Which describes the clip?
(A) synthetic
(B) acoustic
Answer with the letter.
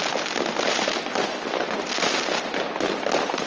B